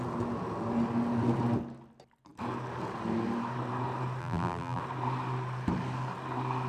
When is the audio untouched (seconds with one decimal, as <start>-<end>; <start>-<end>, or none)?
0.0-4.2; 4.8-6.7